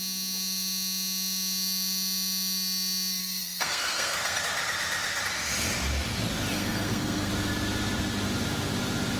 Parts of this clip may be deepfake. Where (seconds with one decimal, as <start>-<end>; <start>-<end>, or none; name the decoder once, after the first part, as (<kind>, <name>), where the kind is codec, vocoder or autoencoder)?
3.2-4.4 (codec, SNAC); 6.5-7.3